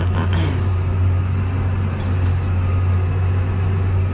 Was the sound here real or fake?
real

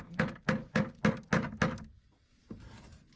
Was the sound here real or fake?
real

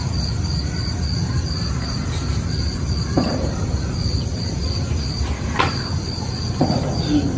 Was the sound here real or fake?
real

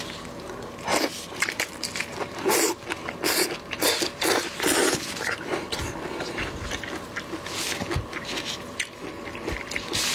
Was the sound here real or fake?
real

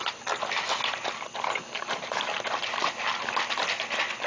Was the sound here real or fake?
real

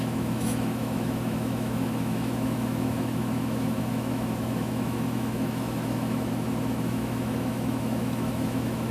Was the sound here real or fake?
fake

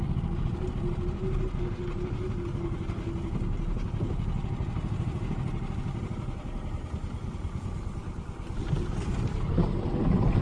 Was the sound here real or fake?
real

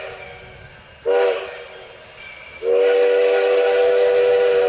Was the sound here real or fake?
real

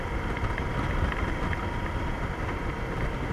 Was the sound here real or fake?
fake